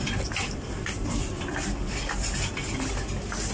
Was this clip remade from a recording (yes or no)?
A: no